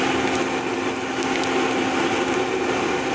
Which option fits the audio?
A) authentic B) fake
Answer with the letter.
A